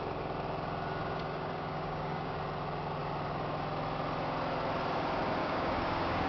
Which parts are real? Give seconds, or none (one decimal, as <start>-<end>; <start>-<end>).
0.0-1.0; 2.4-5.4